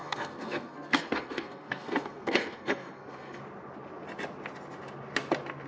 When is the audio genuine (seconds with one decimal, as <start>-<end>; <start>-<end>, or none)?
3.4-5.7